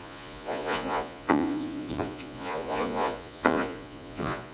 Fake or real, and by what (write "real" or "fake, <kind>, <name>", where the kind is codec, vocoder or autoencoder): fake, vocoder, Vocos